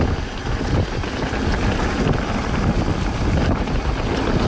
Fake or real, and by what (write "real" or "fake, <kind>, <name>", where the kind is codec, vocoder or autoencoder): real